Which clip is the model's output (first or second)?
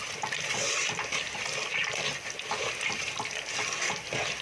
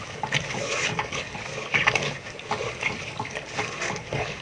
second